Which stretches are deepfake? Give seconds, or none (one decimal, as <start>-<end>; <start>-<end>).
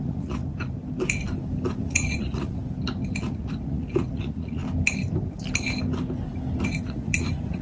0.0-0.4; 1.8-2.6; 3.2-4.6; 6.8-7.6